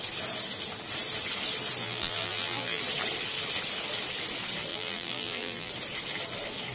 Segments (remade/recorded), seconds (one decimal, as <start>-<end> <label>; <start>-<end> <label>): 0.0-1.8 recorded; 1.8-2.8 remade; 2.8-4.7 recorded; 4.7-5.7 remade; 5.7-6.7 recorded